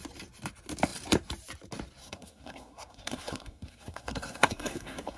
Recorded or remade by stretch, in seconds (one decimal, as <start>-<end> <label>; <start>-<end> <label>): 0.0-2.0 recorded; 2.0-5.2 remade